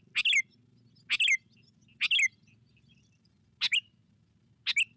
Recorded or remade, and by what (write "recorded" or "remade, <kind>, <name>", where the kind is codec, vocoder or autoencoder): recorded